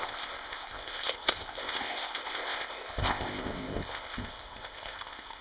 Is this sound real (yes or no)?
no